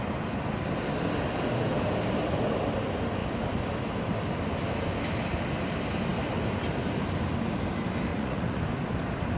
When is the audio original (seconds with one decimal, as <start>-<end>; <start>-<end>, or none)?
0.0-8.1; 8.6-9.4